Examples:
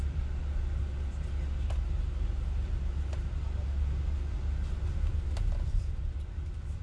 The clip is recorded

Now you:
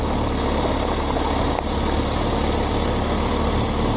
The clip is recorded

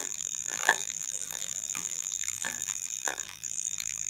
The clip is remade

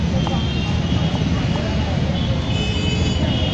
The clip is recorded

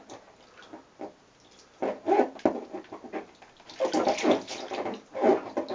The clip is recorded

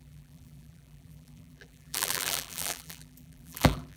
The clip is remade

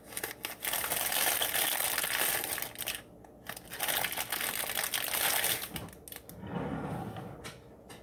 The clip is recorded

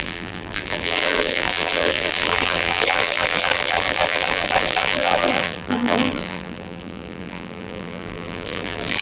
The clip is remade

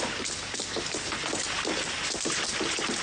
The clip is recorded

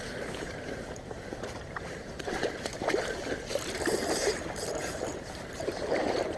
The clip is remade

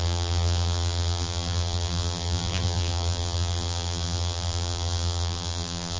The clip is remade